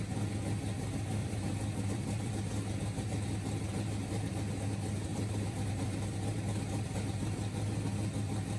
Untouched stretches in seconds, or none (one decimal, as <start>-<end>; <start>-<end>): 0.0-1.2; 2.3-5.1; 6.0-8.6